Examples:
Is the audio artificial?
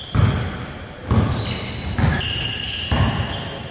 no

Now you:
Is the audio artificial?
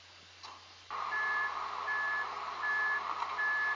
no